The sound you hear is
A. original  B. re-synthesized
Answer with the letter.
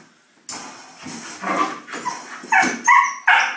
A